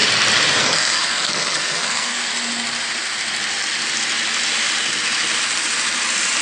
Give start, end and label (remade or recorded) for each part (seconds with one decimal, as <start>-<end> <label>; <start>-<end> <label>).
0.0-0.6 recorded; 0.6-2.3 remade; 2.3-6.4 recorded